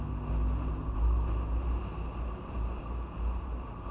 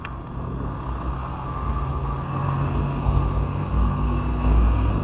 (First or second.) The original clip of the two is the first